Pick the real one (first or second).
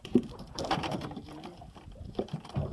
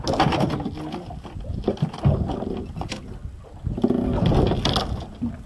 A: second